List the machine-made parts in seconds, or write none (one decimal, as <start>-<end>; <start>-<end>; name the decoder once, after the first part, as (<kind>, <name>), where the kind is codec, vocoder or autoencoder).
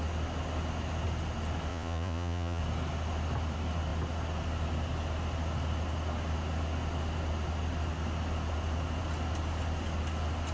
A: 1.7-2.6 (vocoder, Vocos)